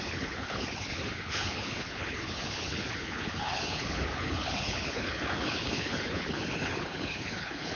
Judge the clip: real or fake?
fake